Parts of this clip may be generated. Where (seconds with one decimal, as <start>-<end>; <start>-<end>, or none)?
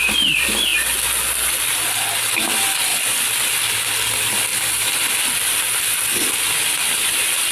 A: 0.0-0.7; 2.4-2.9; 3.7-4.5; 5.2-7.5